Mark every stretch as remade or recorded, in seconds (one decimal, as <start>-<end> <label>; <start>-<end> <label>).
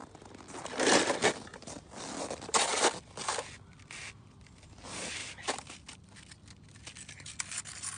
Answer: 0.0-8.0 recorded